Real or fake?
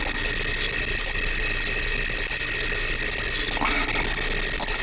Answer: real